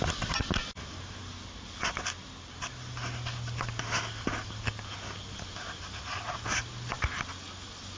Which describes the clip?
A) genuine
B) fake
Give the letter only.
A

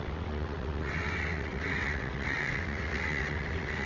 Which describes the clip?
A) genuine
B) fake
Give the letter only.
B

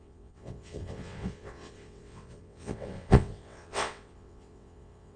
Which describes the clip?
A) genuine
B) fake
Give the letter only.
B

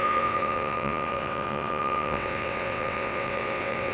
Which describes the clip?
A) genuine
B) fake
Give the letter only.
B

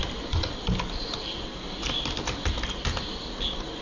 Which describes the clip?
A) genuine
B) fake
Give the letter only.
A